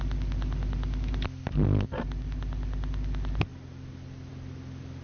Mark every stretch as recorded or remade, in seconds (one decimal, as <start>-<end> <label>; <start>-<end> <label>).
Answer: 0.0-5.0 recorded

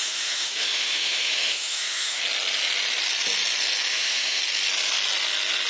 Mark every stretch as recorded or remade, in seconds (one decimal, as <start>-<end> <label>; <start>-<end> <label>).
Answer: 0.0-2.2 remade; 2.2-3.9 recorded; 3.9-4.4 remade; 4.4-5.7 recorded

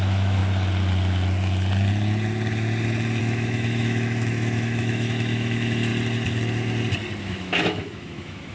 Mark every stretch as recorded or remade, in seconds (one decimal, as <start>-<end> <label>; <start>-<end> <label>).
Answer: 0.0-0.4 remade; 0.4-3.2 recorded; 3.2-5.9 remade; 5.9-7.2 recorded; 7.2-8.5 remade

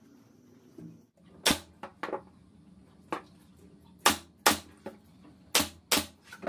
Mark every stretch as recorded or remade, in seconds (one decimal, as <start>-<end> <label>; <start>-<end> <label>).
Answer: 0.0-6.5 recorded

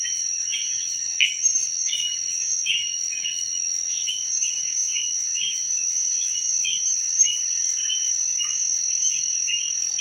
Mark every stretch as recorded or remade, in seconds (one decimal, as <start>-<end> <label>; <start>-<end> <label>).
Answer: 0.0-10.0 remade

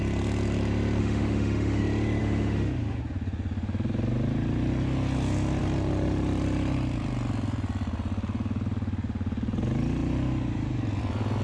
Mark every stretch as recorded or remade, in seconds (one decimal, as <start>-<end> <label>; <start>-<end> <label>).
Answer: 0.0-1.0 recorded; 1.0-1.8 remade; 1.8-2.2 recorded; 2.2-3.0 remade; 3.0-11.4 recorded

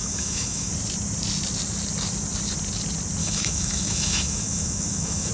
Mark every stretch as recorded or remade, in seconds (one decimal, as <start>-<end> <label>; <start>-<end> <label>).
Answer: 0.0-0.7 remade; 0.7-3.2 recorded; 3.2-5.3 remade